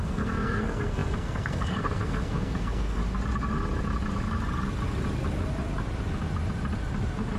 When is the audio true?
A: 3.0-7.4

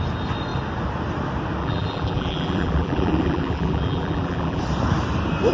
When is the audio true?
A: 0.0-1.6; 4.6-5.5